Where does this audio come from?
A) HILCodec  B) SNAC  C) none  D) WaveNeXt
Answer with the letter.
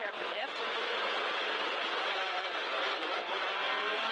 D